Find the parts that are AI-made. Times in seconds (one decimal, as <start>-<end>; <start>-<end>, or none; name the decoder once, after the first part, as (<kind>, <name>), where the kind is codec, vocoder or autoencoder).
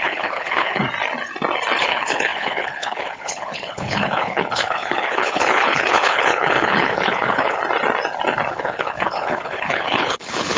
0.0-0.8 (codec, HILCodec); 1.8-7.6; 8.5-10.6